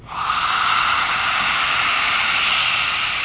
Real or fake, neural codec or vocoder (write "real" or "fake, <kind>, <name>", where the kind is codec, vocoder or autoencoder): real